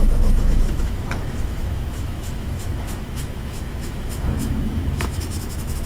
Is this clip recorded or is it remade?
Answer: remade